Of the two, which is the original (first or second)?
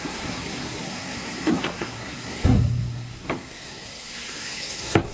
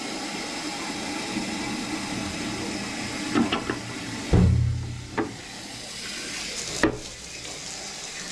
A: second